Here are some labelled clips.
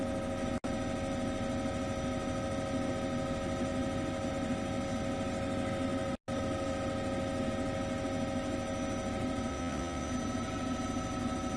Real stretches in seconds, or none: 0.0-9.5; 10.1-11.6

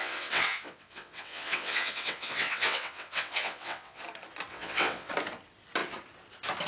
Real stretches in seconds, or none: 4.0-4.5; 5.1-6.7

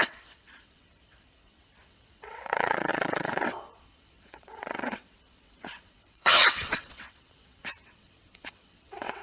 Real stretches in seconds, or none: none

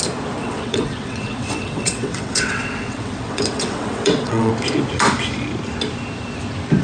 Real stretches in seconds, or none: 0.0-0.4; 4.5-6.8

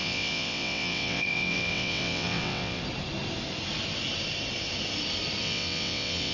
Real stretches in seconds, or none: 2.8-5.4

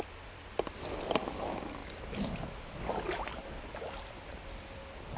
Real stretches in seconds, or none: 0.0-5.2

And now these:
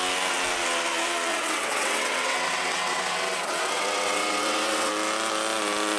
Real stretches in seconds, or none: 0.0-1.3; 4.9-6.0

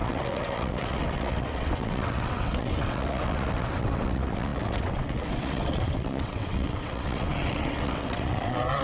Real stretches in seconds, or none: none